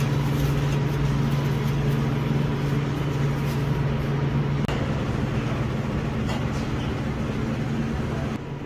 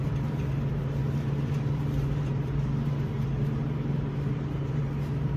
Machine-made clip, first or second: second